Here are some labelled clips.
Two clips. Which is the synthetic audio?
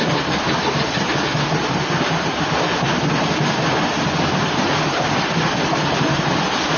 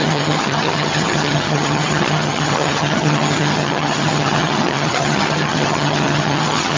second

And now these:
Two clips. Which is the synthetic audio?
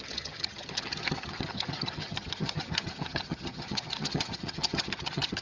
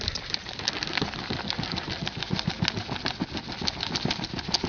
first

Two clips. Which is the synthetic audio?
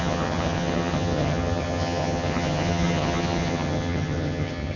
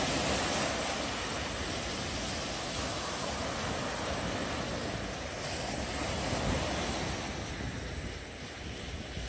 first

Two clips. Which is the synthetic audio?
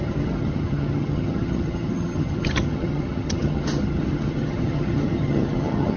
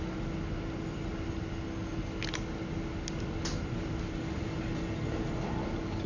first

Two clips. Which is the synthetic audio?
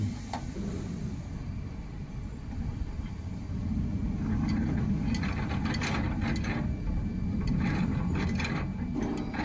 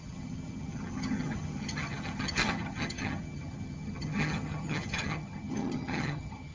second